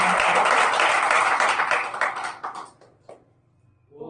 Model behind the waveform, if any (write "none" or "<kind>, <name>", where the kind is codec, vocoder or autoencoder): none